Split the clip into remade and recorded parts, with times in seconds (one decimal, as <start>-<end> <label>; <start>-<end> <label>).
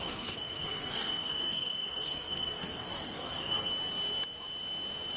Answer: 0.0-3.7 remade; 3.7-5.2 recorded